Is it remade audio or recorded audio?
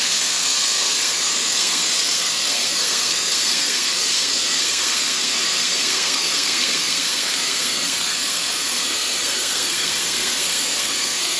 remade